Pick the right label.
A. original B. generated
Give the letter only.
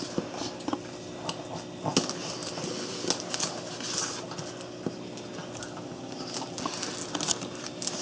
A